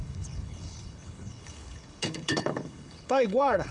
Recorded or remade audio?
remade